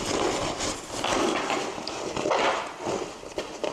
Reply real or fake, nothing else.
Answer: real